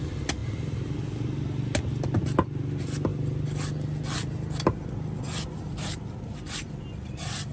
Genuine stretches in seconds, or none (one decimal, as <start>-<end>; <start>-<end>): 0.0-7.5